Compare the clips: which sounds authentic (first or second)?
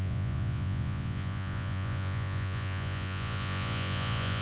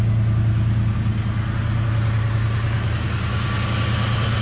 second